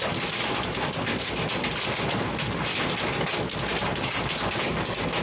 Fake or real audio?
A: real